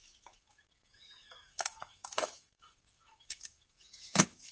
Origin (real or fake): fake